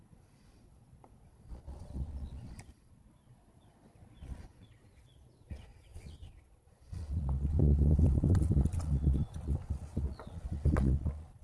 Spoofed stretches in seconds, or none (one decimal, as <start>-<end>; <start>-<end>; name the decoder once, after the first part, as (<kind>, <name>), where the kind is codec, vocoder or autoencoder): 0.0-11.4 (vocoder, Vocos)